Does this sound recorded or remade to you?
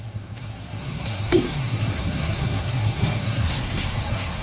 remade